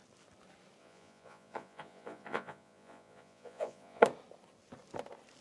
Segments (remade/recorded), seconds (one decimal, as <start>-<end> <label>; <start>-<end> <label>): 0.0-0.8 recorded; 0.8-4.0 remade; 4.0-5.4 recorded